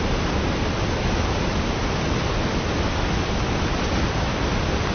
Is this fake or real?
real